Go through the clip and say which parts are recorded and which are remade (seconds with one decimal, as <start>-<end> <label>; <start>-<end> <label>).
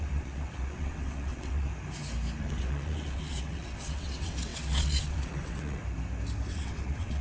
0.0-1.7 remade; 1.7-2.4 recorded; 2.4-5.8 remade; 5.8-6.5 recorded; 6.5-7.2 remade